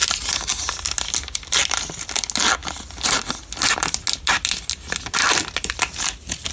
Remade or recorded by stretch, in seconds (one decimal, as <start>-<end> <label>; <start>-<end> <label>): 0.0-6.5 recorded